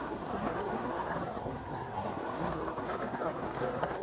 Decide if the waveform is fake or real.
fake